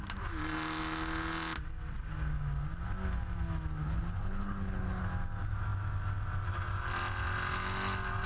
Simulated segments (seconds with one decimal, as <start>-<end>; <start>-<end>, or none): 3.8-5.0

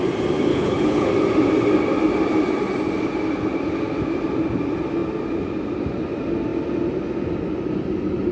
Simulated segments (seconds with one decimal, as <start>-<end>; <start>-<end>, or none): 0.5-1.1

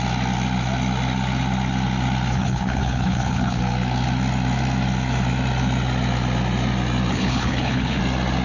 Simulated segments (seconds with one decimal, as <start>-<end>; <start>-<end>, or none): 2.3-3.6; 7.1-8.0

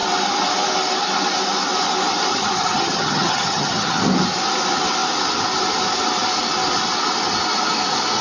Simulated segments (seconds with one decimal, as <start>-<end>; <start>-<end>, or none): 2.3-4.0

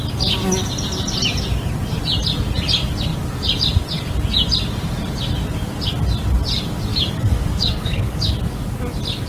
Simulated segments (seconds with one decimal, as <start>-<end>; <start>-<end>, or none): 6.9-8.3

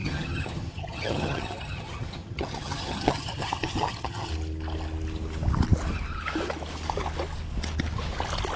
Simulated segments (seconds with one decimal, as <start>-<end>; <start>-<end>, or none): 0.0-4.3